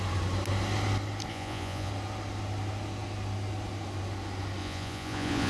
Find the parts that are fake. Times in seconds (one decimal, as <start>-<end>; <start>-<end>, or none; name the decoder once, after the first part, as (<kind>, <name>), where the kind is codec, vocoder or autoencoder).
1.3-1.9 (vocoder, Vocos); 4.6-5.5